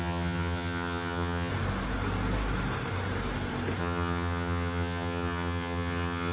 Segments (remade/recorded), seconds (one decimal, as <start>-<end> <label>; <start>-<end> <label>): 0.0-1.5 remade; 1.5-3.8 recorded; 3.8-6.3 remade